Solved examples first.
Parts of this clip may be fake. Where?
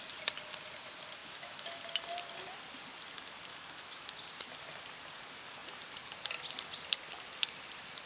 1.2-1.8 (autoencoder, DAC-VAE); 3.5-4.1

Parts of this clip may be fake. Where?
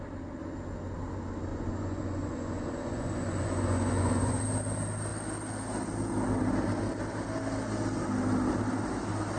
1.5-4.4 (vocoder, Vocos)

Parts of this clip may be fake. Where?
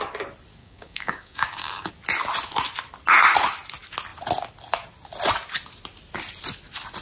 0.6-1.9 (codec, DAC)